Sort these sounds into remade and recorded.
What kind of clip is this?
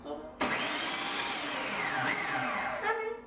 recorded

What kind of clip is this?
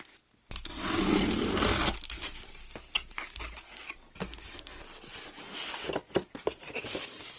recorded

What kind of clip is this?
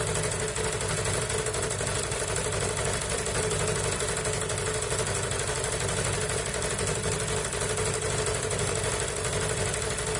recorded